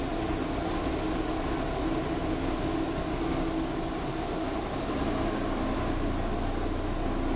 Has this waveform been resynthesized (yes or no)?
no